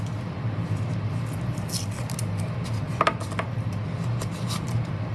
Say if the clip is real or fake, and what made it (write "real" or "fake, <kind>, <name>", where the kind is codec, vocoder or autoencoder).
real